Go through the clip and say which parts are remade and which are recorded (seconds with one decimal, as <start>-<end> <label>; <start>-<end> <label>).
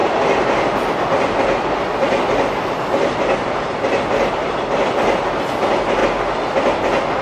0.0-7.2 recorded